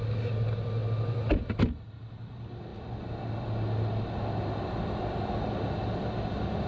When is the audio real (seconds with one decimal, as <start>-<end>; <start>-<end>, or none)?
0.0-6.7

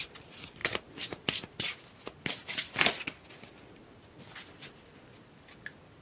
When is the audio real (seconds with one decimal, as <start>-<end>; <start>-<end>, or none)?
0.0-6.0

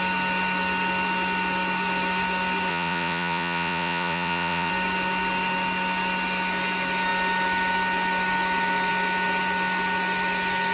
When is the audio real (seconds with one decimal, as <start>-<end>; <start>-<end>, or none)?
0.0-2.7; 4.7-10.7